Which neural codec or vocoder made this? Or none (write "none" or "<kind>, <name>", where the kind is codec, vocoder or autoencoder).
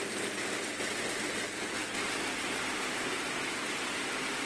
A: none